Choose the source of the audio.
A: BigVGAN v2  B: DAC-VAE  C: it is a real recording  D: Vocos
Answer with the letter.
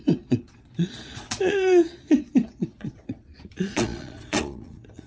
D